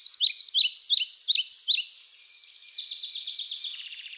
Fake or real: real